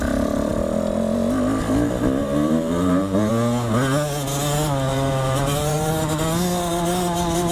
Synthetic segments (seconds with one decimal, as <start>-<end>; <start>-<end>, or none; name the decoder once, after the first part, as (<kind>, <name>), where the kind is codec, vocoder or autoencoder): 2.2-3.3 (vocoder, BigVGAN v2); 4.9-5.9